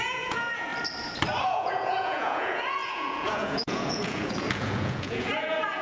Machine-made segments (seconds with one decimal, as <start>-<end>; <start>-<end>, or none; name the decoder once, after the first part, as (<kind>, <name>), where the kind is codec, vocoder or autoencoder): 0.0-0.7 (vocoder, Vocos); 1.4-5.8